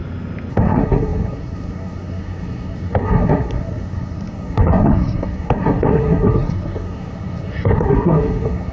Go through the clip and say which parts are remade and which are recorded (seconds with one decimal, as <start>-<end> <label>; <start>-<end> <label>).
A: 0.0-0.5 recorded; 0.5-8.7 remade